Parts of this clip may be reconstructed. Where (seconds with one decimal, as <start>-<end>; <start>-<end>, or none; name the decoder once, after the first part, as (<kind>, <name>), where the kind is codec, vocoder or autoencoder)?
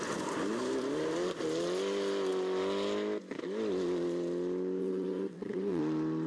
4.8-5.8 (vocoder, WaveNeXt)